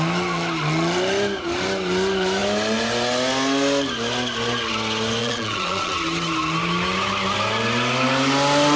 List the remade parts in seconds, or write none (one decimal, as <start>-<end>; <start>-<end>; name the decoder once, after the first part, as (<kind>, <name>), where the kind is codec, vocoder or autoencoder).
5.2-5.9 (vocoder, Vocos)